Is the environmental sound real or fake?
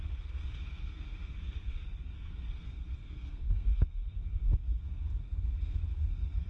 fake